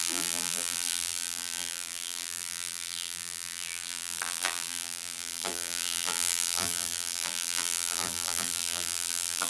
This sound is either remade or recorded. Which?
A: remade